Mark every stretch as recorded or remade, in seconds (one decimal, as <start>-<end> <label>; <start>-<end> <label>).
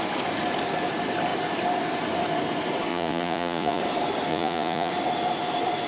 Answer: 0.0-2.9 recorded; 2.9-3.8 remade; 3.8-4.3 recorded; 4.3-4.9 remade; 4.9-5.9 recorded